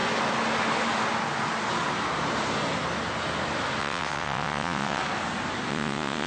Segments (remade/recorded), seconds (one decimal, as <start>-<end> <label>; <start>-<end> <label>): 0.0-3.8 recorded; 3.8-5.0 remade; 5.0-5.7 recorded; 5.7-6.3 remade